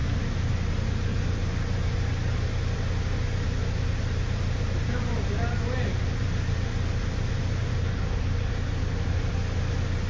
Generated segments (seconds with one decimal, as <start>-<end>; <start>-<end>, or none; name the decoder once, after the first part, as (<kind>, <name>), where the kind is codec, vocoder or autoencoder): none